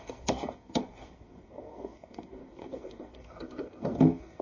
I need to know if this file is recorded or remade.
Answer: remade